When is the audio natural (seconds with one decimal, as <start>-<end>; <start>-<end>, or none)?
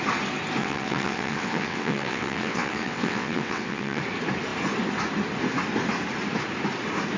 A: 0.0-0.6; 4.0-7.2